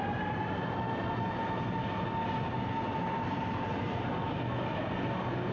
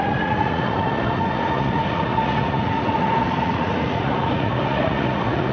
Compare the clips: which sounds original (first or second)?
first